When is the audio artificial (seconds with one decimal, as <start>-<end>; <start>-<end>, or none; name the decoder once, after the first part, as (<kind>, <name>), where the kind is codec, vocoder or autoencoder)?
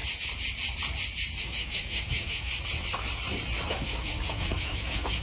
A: 1.4-2.5 (autoencoder, DAC-VAE); 3.7-5.2